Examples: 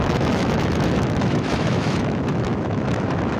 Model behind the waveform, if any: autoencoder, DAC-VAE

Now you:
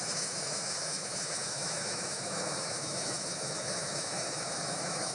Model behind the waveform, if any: autoencoder, DAC-VAE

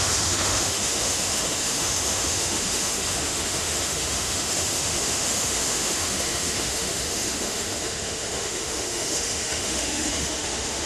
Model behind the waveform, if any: autoencoder, DAC-VAE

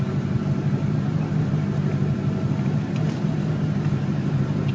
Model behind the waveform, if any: none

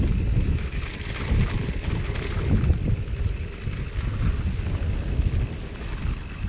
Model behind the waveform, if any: none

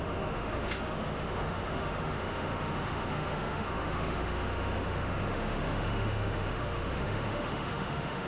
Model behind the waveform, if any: autoencoder, DAC-VAE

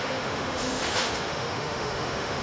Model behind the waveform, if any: autoencoder, DAC-VAE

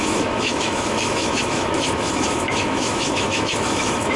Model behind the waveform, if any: autoencoder, DAC-VAE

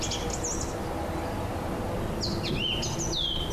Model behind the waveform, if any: none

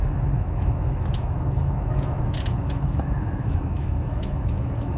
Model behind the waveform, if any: autoencoder, DAC-VAE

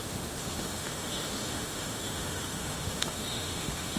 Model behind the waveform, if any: autoencoder, DAC-VAE